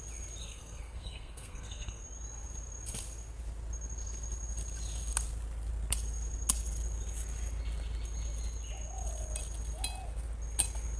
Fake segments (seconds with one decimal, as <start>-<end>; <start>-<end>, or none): 0.4-2.0